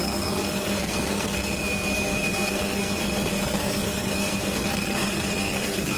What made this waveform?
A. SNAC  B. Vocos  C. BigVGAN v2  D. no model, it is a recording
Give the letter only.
A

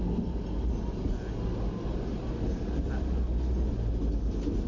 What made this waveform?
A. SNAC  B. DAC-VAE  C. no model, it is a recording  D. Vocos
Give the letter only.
C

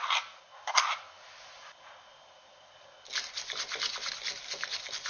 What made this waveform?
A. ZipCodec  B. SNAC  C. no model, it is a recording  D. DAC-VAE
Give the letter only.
C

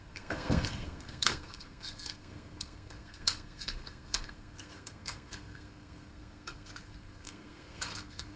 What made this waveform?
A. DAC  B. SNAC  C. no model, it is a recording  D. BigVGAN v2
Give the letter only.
B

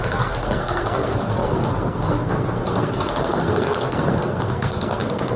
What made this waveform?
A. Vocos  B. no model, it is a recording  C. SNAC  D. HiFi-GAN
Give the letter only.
C